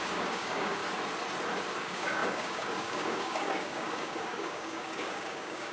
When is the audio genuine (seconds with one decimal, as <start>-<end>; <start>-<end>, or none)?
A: 0.8-1.8